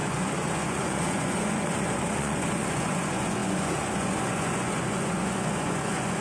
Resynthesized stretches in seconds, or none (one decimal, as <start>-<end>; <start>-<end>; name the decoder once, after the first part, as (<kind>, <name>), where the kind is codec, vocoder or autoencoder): 0.0-6.2 (vocoder, Vocos)